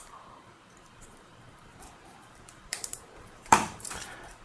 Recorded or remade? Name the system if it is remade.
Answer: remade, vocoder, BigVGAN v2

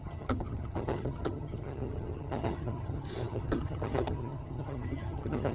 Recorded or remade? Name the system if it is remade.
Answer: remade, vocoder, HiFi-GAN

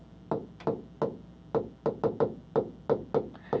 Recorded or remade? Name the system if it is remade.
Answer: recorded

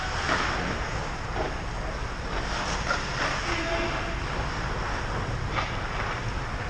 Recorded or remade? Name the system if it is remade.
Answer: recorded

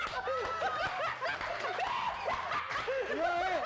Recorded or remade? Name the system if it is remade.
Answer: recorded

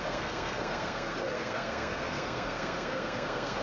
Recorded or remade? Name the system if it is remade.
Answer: remade, codec, SNAC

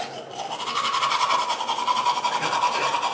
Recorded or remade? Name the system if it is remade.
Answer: recorded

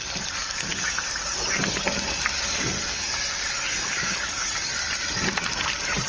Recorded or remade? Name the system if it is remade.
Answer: recorded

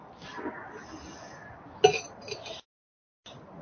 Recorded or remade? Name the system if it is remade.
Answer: recorded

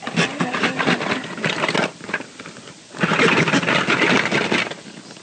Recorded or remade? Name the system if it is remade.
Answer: recorded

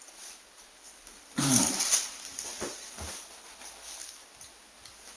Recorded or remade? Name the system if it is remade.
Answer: recorded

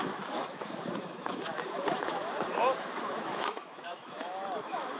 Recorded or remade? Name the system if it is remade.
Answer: remade, autoencoder, DAC-VAE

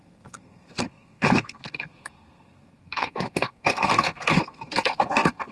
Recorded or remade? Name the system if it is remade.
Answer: remade, codec, SNAC